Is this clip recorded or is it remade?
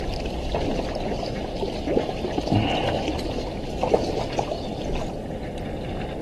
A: recorded